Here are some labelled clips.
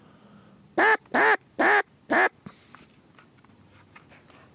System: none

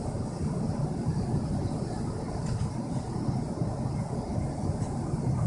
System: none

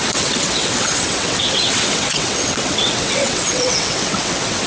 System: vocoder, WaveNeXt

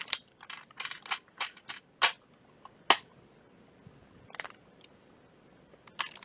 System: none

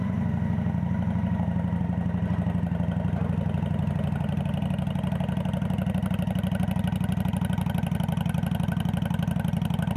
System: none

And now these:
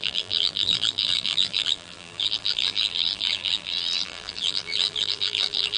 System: vocoder, BigVGAN v2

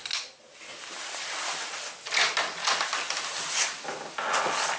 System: none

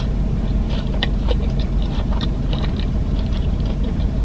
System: vocoder, BigVGAN v2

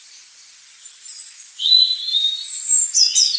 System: vocoder, BigVGAN v2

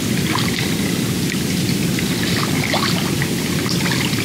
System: none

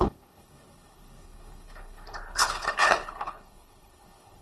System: codec, HILCodec